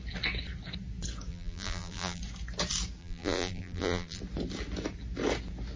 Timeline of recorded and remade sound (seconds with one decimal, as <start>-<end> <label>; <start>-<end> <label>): 0.0-1.3 recorded; 1.3-2.2 remade; 2.2-3.0 recorded; 3.0-4.2 remade; 4.2-5.8 recorded